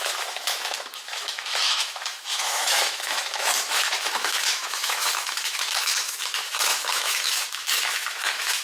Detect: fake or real fake